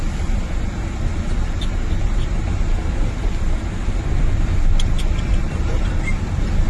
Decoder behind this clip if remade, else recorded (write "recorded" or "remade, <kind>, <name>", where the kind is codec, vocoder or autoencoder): recorded